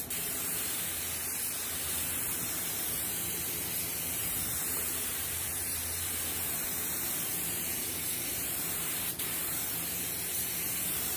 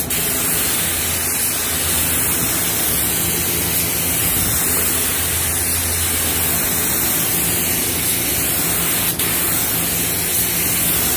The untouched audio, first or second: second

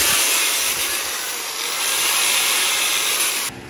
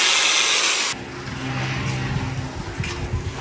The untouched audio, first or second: second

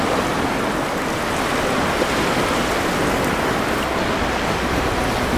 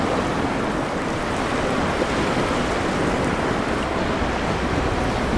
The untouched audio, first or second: first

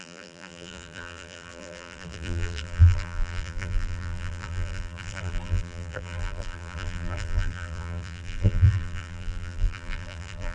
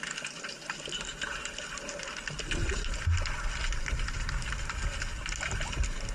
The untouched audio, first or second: second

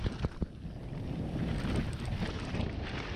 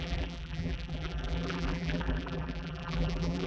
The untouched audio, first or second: first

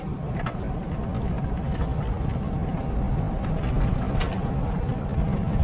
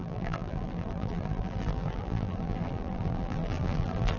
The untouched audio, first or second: first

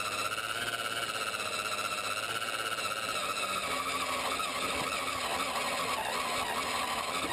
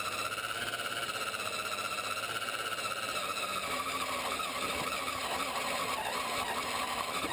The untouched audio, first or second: first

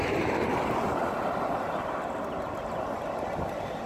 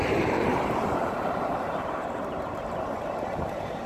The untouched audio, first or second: first